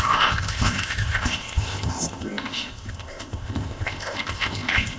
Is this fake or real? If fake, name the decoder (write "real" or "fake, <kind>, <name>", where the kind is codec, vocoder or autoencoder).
fake, codec, ZipCodec